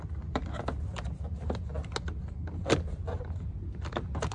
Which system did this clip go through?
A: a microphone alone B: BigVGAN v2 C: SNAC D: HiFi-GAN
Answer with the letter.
A